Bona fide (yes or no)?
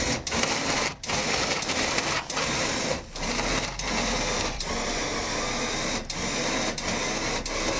yes